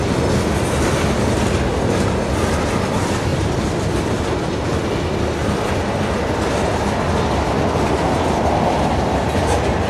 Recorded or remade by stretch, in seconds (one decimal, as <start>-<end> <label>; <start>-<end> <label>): 0.0-9.9 recorded